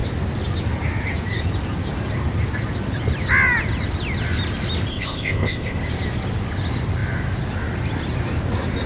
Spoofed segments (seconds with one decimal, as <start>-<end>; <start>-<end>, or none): 4.9-5.8